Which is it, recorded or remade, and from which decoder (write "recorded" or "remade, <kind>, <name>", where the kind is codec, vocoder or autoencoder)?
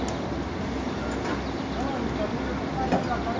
recorded